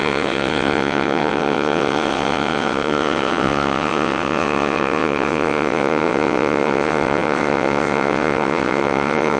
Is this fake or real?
fake